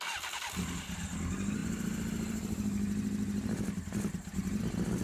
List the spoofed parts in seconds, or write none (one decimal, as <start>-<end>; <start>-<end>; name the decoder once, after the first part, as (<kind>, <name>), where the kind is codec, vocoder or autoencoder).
none